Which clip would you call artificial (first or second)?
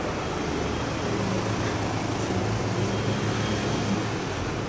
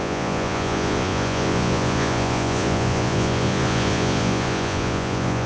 second